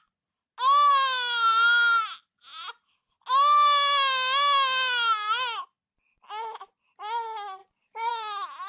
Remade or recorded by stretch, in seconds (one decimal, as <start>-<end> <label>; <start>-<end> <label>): 0.0-7.6 recorded; 7.6-8.1 remade; 8.1-8.7 recorded